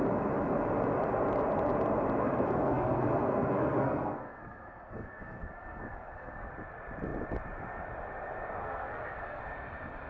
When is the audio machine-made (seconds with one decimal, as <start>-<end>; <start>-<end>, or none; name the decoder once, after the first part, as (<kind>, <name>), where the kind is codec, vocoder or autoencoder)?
2.2-6.5 (codec, SNAC); 8.6-9.4